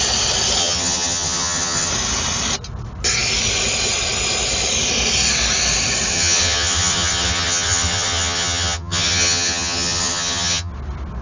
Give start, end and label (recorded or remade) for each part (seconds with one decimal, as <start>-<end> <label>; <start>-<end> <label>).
0.0-0.6 recorded; 0.6-1.9 remade; 1.9-6.1 recorded; 6.1-10.7 remade; 10.7-11.2 recorded